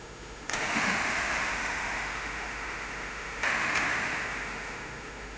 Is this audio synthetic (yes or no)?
yes